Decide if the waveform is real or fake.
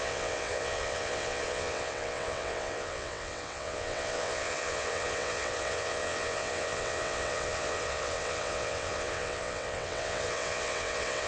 fake